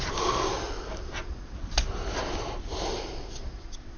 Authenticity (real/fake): real